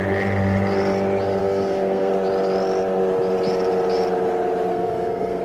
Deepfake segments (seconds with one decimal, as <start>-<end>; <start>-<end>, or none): 1.4-2.1; 4.7-5.4